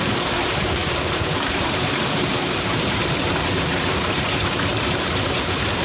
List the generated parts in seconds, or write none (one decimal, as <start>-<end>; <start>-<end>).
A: 0.0-5.8